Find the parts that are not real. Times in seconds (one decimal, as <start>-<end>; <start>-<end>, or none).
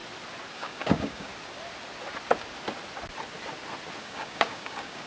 0.5-1.3; 4.0-5.1